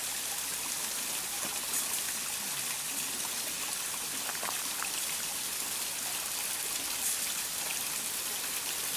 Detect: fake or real real